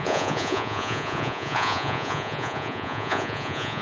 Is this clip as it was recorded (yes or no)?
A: no